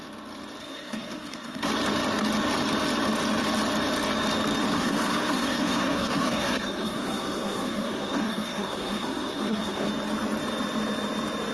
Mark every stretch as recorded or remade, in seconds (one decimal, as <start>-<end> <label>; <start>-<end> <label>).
0.0-0.6 recorded; 0.6-1.7 remade; 1.7-4.7 recorded; 4.7-9.9 remade; 9.9-11.5 recorded